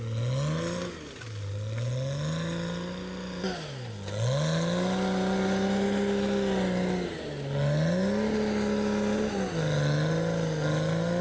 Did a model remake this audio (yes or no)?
no